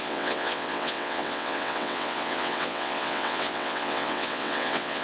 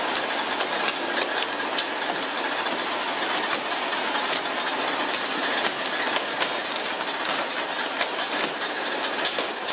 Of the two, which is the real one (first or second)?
second